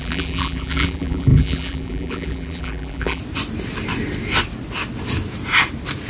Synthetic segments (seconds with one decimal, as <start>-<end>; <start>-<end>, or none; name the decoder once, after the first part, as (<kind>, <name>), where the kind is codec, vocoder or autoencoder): 0.0-3.2 (vocoder, BigVGAN v2)